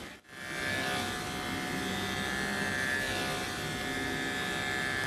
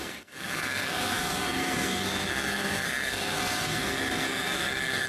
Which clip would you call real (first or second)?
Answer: first